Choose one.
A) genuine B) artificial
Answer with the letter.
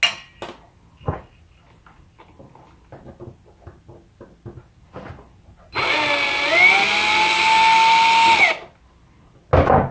A